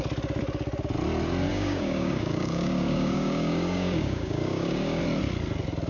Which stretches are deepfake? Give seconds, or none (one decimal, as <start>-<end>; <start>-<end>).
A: 1.5-5.0